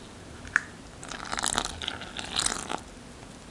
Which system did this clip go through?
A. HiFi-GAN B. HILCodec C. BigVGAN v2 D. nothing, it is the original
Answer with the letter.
D